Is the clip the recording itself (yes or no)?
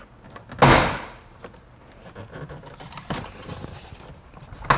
yes